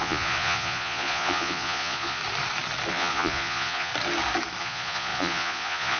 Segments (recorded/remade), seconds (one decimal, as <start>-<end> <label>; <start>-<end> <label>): 0.0-2.2 remade; 2.2-2.9 recorded; 2.9-3.9 remade; 3.9-4.6 recorded; 4.6-6.0 remade